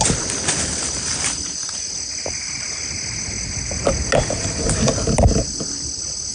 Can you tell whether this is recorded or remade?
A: recorded